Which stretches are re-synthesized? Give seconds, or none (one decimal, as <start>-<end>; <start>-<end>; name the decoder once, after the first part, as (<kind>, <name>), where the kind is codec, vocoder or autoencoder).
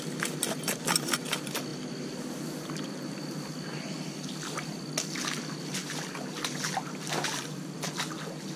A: none